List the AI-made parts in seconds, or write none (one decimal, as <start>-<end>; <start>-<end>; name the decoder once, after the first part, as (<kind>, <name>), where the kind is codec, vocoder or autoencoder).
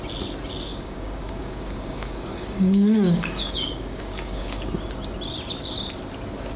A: 0.7-4.7 (codec, DAC)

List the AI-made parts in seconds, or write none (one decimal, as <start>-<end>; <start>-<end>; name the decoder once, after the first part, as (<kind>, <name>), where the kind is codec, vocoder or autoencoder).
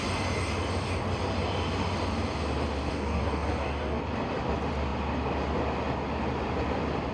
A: 2.9-4.0 (codec, DAC)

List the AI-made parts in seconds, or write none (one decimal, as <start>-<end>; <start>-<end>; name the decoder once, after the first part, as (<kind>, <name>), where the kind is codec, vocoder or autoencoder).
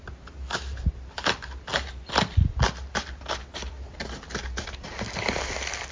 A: none